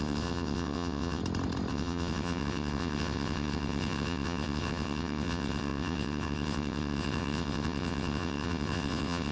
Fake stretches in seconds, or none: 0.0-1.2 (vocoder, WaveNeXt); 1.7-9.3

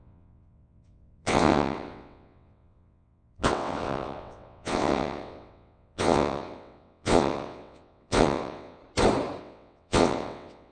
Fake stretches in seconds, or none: 0.0-8.8 (vocoder, WaveNeXt); 9.4-10.7

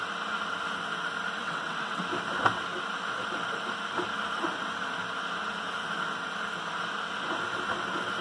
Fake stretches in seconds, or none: 1.4-2.0 (vocoder, WaveNeXt)

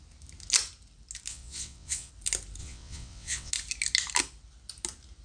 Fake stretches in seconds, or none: 1.3-2.1 (vocoder, WaveNeXt); 2.6-3.5

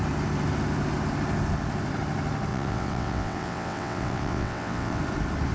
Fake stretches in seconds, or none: 2.5-5.0 (vocoder, WaveNeXt)

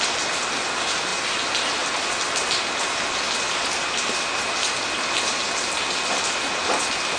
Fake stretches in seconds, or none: none

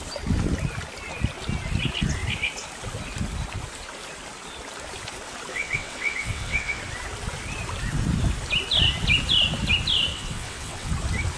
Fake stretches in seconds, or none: 5.5-6.8 (vocoder, WaveNeXt); 10.1-10.9